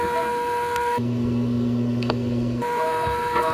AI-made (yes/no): yes